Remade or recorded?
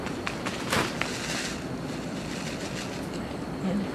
recorded